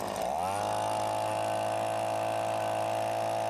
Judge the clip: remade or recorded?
recorded